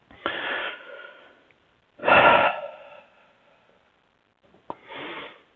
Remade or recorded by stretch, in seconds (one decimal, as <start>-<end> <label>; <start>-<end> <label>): 0.0-0.6 recorded; 0.6-1.2 remade; 1.2-2.0 recorded; 2.0-2.6 remade; 2.6-5.6 recorded